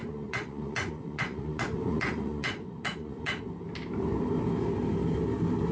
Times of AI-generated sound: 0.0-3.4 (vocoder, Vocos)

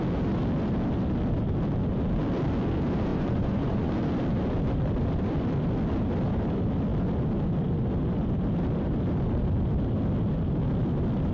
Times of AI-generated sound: 3.1-3.9 (vocoder, Vocos)

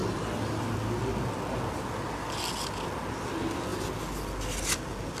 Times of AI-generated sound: none